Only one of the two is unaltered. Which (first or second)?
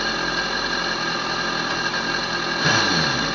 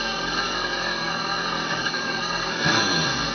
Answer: first